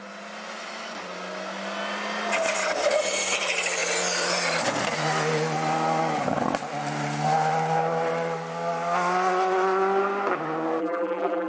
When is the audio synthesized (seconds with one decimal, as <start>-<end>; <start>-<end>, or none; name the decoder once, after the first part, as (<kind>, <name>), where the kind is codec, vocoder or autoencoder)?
10.8-11.5 (vocoder, BigVGAN v2)